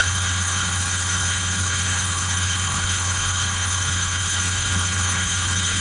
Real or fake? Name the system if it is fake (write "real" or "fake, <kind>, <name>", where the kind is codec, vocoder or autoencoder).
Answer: fake, codec, HILCodec